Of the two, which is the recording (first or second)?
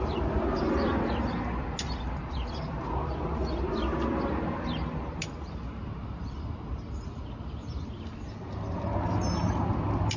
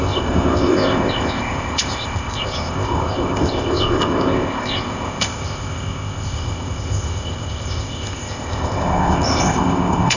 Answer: first